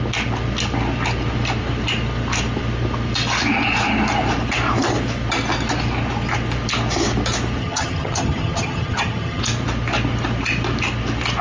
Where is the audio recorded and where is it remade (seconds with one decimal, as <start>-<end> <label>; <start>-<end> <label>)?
0.0-7.6 recorded; 7.6-9.4 remade; 9.4-11.4 recorded